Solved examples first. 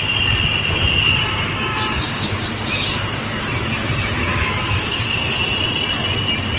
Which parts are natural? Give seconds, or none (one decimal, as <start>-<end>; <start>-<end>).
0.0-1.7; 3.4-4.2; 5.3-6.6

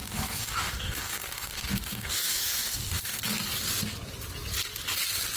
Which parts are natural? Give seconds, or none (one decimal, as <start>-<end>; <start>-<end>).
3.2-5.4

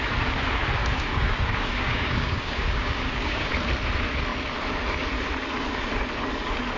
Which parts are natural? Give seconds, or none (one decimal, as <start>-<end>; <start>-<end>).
0.0-0.8; 3.5-6.8

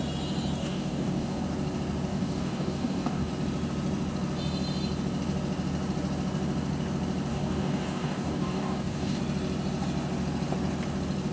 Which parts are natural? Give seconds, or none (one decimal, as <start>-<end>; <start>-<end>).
0.0-0.6; 1.4-2.1; 3.3-7.3; 9.2-11.3